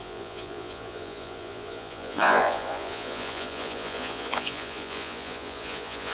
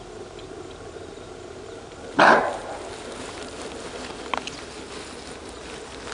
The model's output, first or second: first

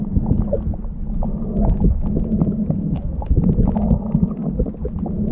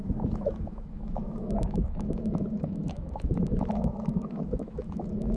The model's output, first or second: second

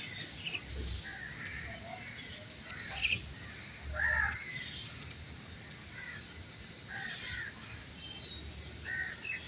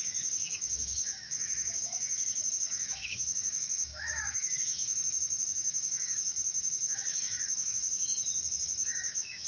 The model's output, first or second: second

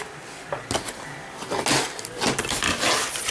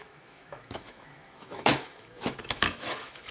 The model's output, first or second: second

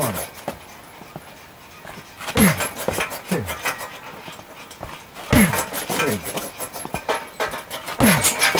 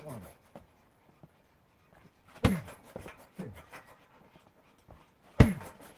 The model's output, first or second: second